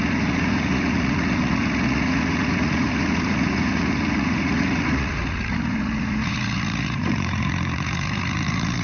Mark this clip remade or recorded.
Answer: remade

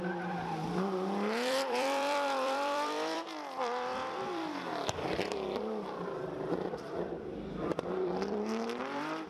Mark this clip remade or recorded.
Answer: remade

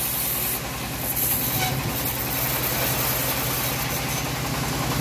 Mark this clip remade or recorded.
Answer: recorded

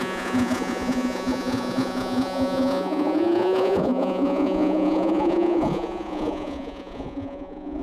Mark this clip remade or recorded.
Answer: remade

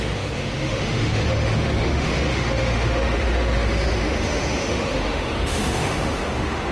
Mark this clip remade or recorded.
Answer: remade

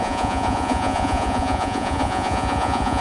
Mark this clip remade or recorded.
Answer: remade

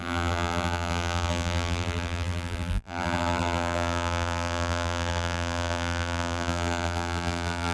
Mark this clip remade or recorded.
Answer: remade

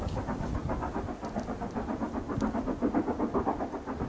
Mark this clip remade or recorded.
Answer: recorded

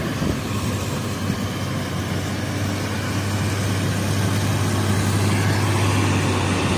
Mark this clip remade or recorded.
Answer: recorded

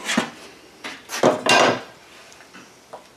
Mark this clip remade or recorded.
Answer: recorded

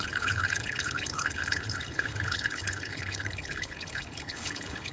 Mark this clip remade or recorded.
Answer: remade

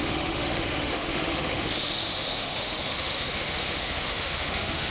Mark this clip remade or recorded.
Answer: remade